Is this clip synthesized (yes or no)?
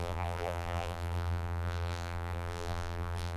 yes